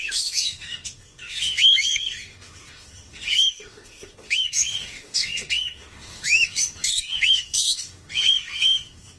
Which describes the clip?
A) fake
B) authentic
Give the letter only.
A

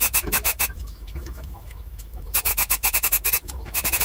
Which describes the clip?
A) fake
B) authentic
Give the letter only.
A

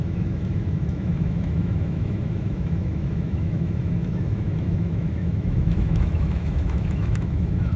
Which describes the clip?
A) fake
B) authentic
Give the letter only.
A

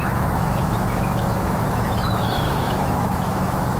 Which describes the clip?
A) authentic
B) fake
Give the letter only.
B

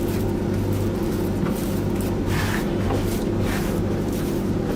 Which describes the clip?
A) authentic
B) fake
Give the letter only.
A